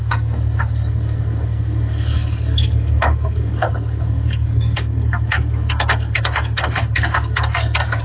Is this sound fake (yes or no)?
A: yes